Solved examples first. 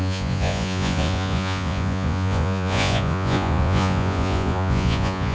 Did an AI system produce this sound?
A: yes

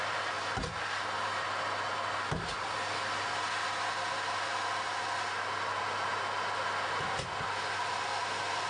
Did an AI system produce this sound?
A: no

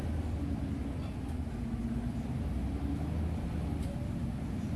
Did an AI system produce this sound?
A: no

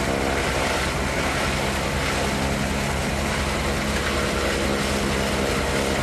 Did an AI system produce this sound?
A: no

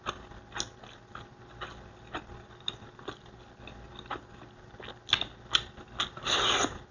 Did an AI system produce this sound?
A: no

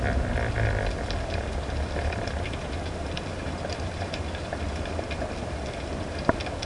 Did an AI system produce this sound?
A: no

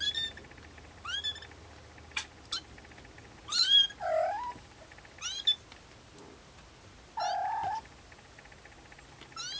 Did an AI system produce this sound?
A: no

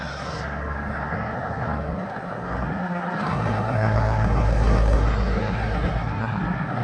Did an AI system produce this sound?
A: yes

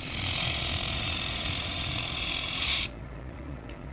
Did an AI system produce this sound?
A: yes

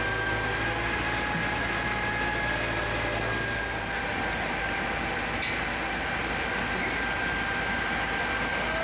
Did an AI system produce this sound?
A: no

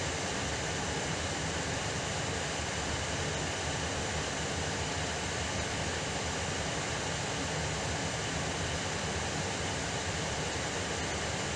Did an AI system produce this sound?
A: no